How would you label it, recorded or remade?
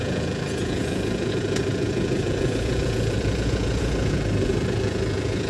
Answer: remade